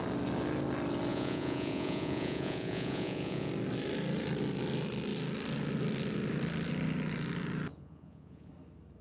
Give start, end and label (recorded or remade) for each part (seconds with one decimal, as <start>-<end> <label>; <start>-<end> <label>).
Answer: 0.0-1.1 recorded; 1.1-3.5 remade; 3.5-7.7 recorded; 7.7-8.5 remade; 8.5-9.0 recorded